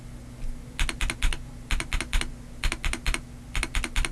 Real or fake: real